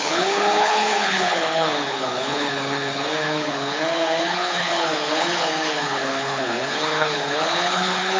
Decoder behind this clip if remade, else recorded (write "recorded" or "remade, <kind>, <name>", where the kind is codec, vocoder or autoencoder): remade, codec, HILCodec